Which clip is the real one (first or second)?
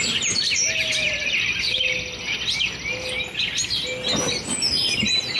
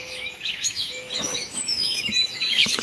first